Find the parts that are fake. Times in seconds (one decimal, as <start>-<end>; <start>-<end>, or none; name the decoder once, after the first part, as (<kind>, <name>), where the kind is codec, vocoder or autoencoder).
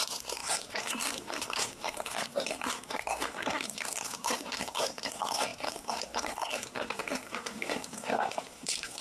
0.0-9.0 (codec, SNAC)